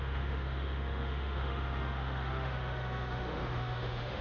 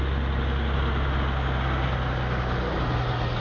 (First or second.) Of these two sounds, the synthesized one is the first